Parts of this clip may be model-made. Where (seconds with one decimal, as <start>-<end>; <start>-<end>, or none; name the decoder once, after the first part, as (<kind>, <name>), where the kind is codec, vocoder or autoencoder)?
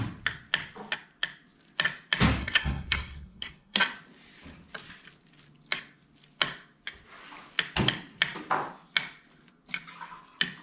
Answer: 2.4-3.8 (codec, SNAC)